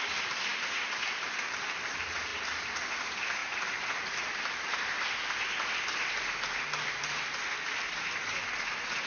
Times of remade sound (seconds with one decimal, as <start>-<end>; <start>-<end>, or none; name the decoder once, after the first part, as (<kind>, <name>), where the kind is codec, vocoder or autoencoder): 2.3-2.9 (vocoder, BigVGAN v2); 3.4-6.2